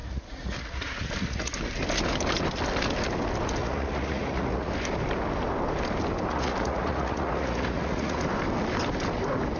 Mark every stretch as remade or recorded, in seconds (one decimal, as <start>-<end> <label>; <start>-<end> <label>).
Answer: 0.0-1.5 remade; 1.5-3.6 recorded; 3.6-4.7 remade; 4.7-6.3 recorded; 6.3-8.2 remade; 8.2-9.6 recorded